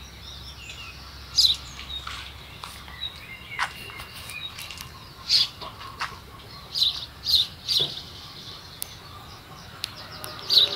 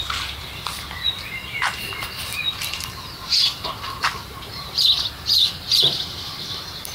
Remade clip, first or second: second